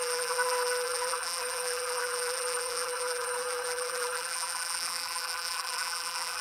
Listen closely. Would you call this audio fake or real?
fake